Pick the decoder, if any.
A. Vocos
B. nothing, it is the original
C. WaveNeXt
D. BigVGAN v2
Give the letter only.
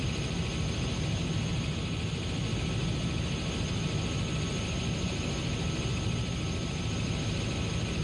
B